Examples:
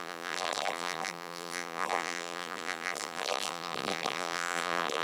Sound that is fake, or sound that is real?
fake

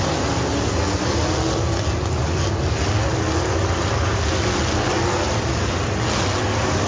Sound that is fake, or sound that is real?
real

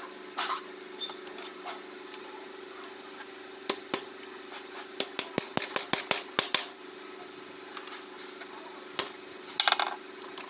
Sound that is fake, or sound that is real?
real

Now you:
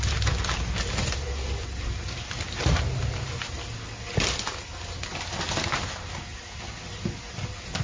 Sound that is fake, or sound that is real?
real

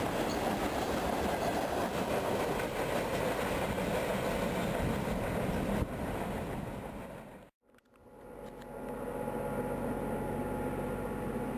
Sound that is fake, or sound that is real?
real